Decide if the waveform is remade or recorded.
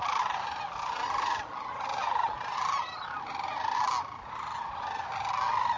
recorded